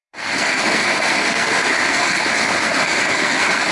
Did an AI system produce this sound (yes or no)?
yes